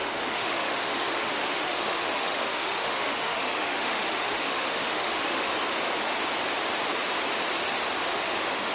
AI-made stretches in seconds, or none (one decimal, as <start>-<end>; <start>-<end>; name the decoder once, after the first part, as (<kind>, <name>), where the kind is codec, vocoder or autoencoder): 0.0-5.5 (autoencoder, DAC-VAE); 8.0-8.7